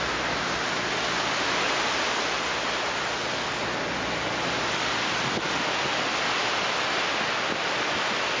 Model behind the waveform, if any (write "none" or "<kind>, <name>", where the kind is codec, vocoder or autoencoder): none